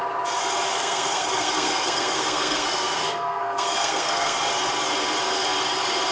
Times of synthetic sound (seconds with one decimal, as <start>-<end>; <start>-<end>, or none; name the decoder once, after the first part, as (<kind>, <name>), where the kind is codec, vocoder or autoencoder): 0.7-4.4 (codec, SNAC)